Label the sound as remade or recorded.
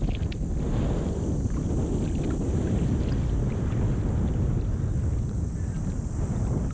recorded